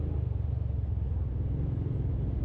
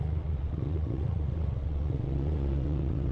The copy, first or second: second